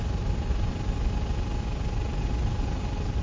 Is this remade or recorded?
recorded